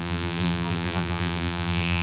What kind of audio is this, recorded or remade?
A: remade